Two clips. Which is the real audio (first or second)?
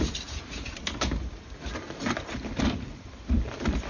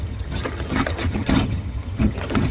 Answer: first